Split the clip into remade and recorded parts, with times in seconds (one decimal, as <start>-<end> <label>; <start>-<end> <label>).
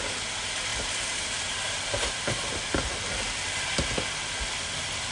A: 0.0-0.7 recorded; 0.7-2.1 remade; 2.1-5.1 recorded